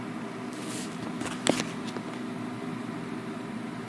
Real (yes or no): yes